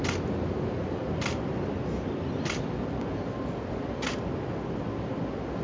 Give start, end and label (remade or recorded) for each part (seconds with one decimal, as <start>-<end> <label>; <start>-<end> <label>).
0.0-5.6 recorded